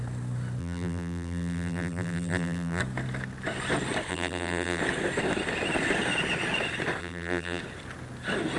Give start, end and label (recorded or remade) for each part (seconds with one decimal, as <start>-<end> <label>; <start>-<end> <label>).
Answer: 0.0-0.6 recorded; 0.6-2.8 remade; 2.8-4.1 recorded; 4.1-4.8 remade; 4.8-7.0 recorded; 7.0-7.6 remade; 7.6-8.6 recorded